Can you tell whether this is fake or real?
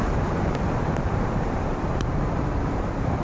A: fake